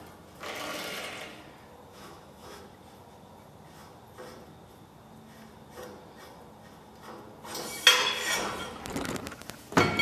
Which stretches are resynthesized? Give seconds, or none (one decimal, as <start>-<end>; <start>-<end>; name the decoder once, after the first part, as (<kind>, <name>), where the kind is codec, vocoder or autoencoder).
1.9-2.6 (autoencoder, DAC-VAE)

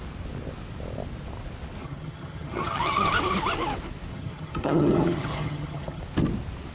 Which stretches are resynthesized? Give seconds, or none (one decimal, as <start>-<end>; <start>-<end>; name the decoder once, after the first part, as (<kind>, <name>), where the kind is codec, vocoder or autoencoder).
1.8-3.1 (vocoder, HiFi-GAN); 4.1-6.0

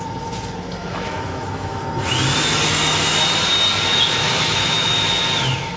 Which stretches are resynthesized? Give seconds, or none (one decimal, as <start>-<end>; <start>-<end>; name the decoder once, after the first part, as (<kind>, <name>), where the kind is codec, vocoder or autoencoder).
0.8-1.8 (autoencoder, DAC-VAE); 4.2-5.1

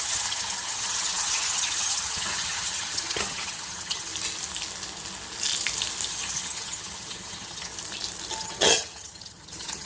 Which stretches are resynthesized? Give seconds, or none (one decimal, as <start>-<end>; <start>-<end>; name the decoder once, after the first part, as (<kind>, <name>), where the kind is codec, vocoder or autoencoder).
0.0-4.1 (vocoder, HiFi-GAN); 6.1-7.7; 8.4-9.9

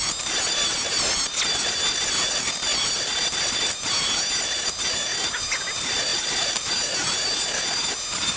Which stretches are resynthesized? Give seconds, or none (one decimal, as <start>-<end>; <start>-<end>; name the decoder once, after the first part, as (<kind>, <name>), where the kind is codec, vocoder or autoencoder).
6.1-6.7 (vocoder, BigVGAN v2)

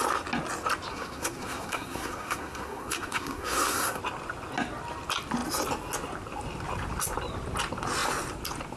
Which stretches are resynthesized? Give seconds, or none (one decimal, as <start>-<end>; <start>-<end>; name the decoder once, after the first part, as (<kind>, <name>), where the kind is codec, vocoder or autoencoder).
0.9-4.0 (codec, SNAC)